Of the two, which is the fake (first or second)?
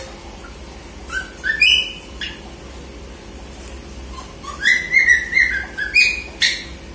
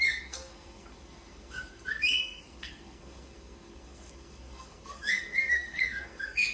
second